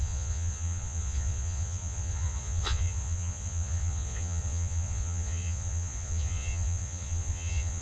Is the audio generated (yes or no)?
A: yes